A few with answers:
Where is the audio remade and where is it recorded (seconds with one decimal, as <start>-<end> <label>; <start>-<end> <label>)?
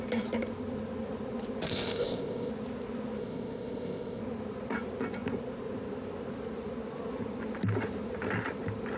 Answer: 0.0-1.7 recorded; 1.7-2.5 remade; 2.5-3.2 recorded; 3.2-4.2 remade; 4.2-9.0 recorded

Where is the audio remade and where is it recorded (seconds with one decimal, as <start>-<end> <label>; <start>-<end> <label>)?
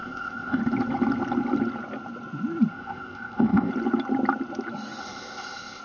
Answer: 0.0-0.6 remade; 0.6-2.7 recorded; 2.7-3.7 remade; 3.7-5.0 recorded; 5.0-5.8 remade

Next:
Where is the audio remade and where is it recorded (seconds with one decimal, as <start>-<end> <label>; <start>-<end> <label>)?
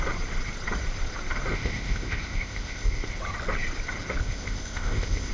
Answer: 0.0-1.5 recorded; 1.5-3.1 remade; 3.1-4.2 recorded; 4.2-5.3 remade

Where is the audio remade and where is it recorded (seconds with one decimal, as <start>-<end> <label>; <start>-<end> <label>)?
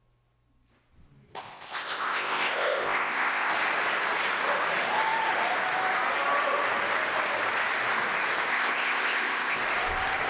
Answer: 0.0-1.3 recorded; 1.3-3.5 remade; 3.5-8.5 recorded; 8.5-9.6 remade; 9.6-10.3 recorded